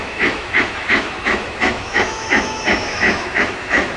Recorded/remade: remade